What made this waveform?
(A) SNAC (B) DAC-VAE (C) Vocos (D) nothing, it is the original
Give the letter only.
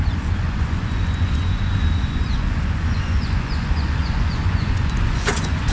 C